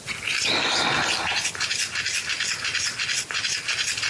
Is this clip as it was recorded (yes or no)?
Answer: yes